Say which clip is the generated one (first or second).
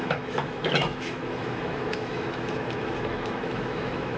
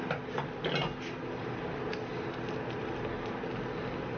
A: first